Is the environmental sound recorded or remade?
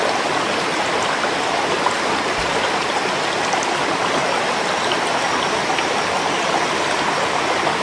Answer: recorded